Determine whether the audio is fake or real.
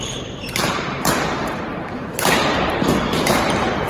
fake